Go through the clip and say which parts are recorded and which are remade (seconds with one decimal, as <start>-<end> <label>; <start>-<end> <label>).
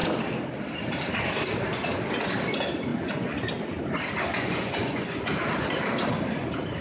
0.0-2.9 recorded; 2.9-3.5 remade; 3.5-4.3 recorded; 4.3-5.2 remade; 5.2-6.8 recorded